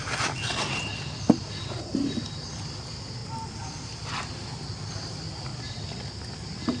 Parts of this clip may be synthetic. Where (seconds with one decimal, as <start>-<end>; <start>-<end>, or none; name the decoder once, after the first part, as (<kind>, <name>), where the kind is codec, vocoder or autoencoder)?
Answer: none